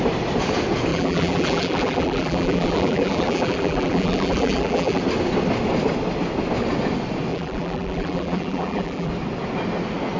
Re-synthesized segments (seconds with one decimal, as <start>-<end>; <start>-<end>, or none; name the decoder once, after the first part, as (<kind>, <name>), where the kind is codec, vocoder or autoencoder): 0.9-5.0 (vocoder, BigVGAN v2); 7.3-9.1